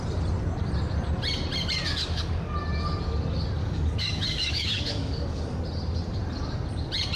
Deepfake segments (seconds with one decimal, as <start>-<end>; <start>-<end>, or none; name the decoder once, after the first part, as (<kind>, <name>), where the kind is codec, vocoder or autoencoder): 2.0-2.5 (codec, DAC); 3.6-5.6